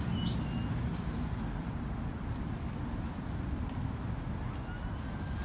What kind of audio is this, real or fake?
real